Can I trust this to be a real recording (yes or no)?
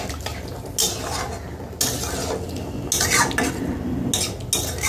yes